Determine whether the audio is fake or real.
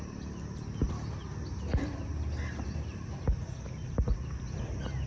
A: real